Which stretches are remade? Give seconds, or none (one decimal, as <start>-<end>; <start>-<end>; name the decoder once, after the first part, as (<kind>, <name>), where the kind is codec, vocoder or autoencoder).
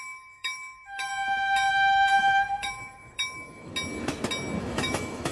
0.0-1.1 (autoencoder, DAC-VAE); 1.7-3.7; 4.6-5.3